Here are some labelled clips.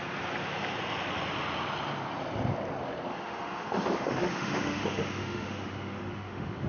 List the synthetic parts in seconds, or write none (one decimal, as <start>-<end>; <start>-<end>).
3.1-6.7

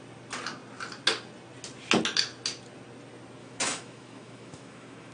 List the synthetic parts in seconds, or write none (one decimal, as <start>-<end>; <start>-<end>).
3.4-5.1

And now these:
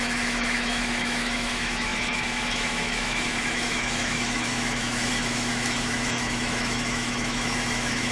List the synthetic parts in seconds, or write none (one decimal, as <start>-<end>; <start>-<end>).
0.0-8.1